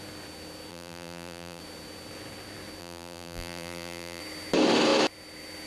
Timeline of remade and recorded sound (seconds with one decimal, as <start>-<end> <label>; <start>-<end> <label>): 0.0-0.7 recorded; 0.7-1.6 remade; 1.6-2.8 recorded; 2.8-4.2 remade; 4.2-5.7 recorded